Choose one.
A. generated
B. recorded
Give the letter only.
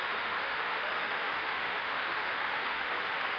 A